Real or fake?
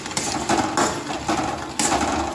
real